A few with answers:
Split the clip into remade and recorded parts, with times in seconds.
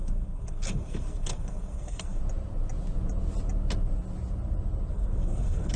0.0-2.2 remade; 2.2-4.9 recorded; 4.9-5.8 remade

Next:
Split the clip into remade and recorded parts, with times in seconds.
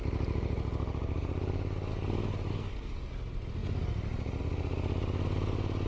0.0-2.5 recorded; 2.5-3.1 remade; 3.1-5.9 recorded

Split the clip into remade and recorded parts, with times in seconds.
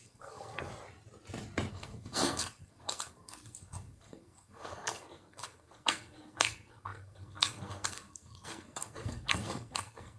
0.0-0.7 remade; 0.7-1.7 recorded; 1.7-10.2 remade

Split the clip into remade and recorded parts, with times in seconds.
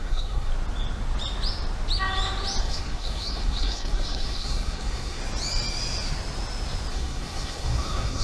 0.0-0.5 remade; 0.5-2.6 recorded; 2.6-5.2 remade; 5.2-6.9 recorded; 6.9-8.2 remade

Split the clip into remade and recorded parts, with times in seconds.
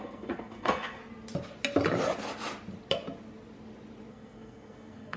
0.0-1.0 remade; 1.0-4.1 recorded; 4.1-5.2 remade